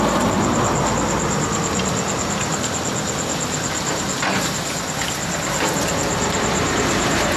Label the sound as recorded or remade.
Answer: recorded